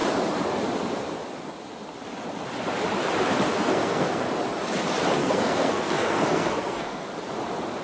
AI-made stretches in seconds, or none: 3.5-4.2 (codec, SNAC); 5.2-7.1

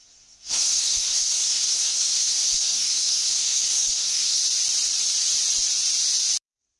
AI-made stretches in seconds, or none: 0.0-4.4 (codec, SNAC)

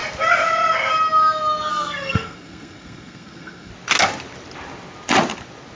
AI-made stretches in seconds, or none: 1.7-3.7 (codec, SNAC)

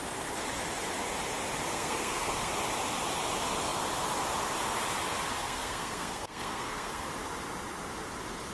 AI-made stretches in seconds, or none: 1.7-2.5 (codec, SNAC); 5.4-7.1

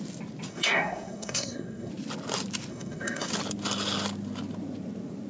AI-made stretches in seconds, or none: 0.5-1.9 (codec, SNAC); 2.7-3.3

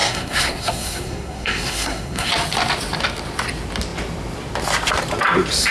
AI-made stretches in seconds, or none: 0.0-2.3 (codec, SNAC)